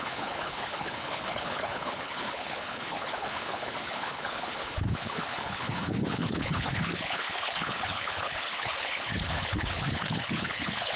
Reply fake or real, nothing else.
fake